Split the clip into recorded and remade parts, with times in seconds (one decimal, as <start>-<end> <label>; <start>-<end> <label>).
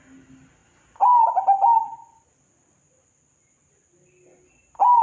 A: 0.0-5.0 recorded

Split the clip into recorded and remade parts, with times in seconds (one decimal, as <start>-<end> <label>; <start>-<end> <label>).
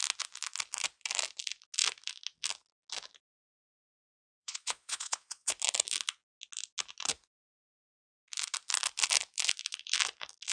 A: 0.0-4.4 recorded; 4.4-5.5 remade; 5.5-10.5 recorded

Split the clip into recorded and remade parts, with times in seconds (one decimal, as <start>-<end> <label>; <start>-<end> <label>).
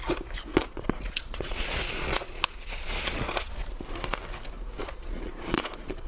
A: 0.0-0.5 recorded; 0.5-3.7 remade; 3.7-4.8 recorded; 4.8-6.1 remade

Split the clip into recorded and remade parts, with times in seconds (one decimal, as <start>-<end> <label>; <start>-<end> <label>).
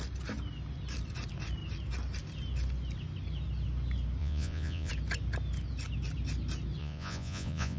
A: 0.0-4.2 recorded; 4.2-4.9 remade; 4.9-6.8 recorded; 6.8-7.8 remade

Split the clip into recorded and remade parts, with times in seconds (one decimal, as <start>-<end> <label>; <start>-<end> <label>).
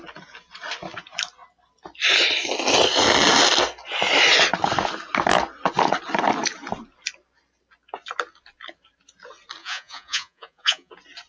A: 0.0-9.6 recorded; 9.6-10.9 remade; 10.9-11.3 recorded